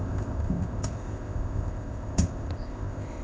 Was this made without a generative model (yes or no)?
no